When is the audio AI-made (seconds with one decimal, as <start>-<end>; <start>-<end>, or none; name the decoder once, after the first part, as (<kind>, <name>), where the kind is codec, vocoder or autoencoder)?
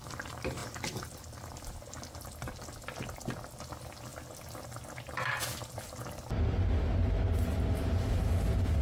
none